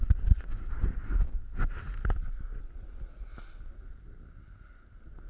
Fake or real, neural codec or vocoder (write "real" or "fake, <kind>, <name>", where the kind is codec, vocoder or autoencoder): real